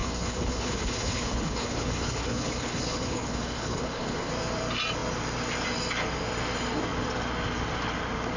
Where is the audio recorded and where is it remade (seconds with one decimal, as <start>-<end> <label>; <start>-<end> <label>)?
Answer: 0.0-4.3 remade; 4.3-8.4 recorded